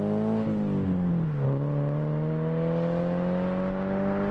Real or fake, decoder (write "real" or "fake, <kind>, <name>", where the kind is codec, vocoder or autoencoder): real